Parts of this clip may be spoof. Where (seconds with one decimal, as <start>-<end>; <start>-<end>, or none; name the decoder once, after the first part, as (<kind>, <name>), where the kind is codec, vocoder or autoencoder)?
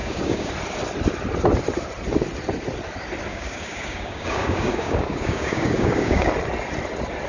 0.0-0.5 (codec, DAC); 3.3-6.3